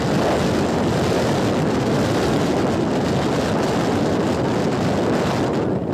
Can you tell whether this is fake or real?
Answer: real